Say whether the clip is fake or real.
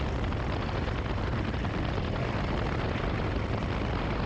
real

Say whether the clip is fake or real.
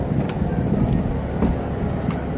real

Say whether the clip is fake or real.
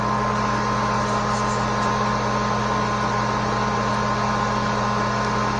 real